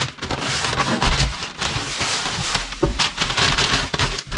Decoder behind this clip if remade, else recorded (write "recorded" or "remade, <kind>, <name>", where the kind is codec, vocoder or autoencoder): recorded